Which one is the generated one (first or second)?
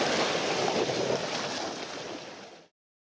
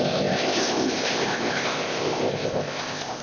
second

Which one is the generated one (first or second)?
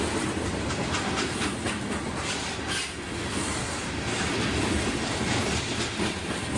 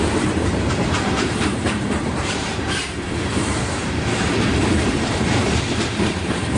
second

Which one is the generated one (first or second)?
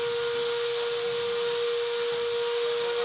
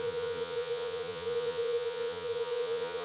second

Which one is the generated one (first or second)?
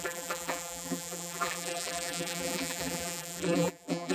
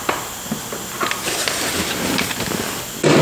first